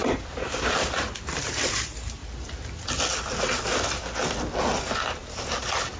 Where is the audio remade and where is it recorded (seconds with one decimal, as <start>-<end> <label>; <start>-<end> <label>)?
0.0-6.0 recorded